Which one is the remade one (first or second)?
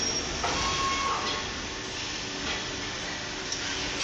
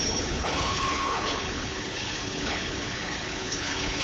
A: second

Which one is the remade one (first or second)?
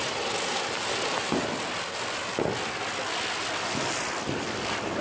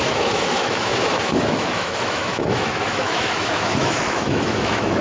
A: second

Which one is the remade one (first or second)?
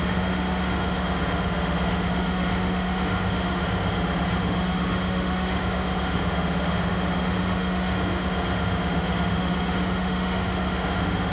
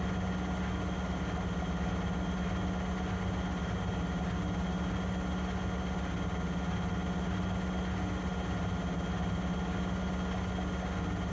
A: first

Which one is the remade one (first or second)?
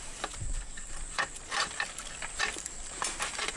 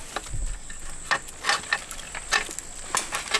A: first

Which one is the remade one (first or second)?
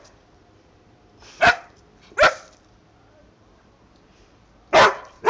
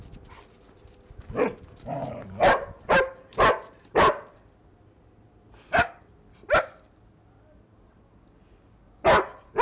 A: first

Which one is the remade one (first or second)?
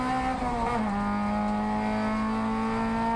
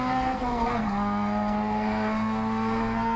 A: second